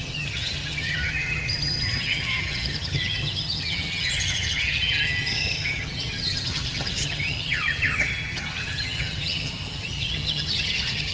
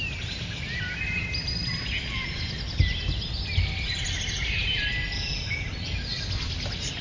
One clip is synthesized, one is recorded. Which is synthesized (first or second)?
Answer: first